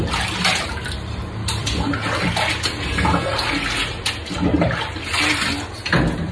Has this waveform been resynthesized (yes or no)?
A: no